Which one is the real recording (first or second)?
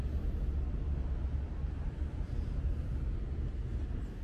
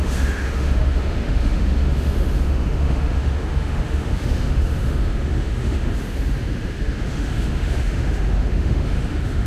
first